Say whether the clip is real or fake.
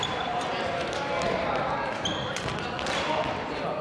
real